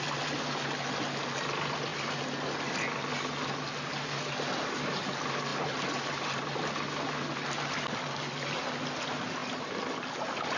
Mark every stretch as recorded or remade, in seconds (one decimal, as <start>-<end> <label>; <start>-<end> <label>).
0.0-10.6 recorded